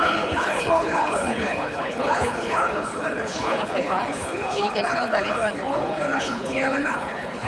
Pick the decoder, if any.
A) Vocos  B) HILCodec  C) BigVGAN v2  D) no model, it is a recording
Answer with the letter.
B